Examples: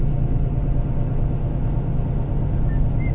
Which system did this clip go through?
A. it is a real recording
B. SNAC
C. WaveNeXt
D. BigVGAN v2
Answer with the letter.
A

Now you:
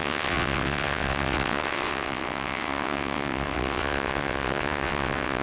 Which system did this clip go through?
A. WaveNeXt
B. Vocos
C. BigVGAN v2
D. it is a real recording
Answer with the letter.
A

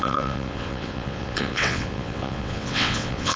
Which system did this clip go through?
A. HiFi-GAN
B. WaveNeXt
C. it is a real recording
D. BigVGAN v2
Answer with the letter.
B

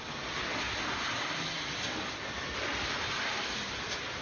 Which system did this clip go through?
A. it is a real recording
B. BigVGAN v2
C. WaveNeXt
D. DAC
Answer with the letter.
A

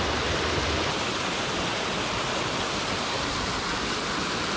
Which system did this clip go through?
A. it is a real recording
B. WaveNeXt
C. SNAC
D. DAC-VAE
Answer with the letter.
A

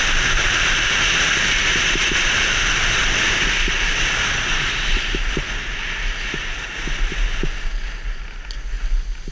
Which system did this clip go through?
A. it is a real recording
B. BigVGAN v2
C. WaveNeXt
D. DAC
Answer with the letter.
A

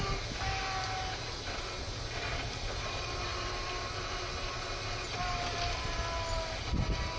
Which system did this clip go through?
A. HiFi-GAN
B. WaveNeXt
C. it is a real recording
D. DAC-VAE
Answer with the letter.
C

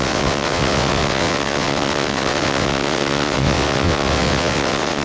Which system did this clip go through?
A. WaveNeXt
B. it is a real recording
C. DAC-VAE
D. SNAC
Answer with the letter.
A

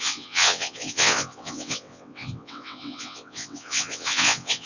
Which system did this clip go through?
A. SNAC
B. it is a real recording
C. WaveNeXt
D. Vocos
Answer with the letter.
C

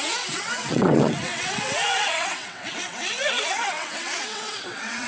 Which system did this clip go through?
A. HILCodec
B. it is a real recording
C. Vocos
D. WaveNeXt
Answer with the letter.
D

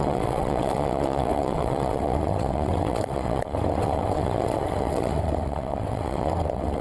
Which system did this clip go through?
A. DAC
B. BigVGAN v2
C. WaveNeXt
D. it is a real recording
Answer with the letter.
C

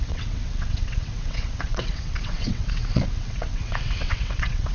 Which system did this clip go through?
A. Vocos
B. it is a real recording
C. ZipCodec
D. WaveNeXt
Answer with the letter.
D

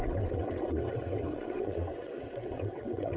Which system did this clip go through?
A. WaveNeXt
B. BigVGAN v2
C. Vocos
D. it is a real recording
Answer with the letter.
A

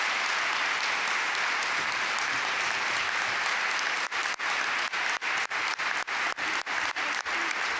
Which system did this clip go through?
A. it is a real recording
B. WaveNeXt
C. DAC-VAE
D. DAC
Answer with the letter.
A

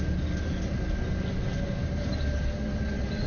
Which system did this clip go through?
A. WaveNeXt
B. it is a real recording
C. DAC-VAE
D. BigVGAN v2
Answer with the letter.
B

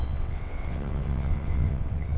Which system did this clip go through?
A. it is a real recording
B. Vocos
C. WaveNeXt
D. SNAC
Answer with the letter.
C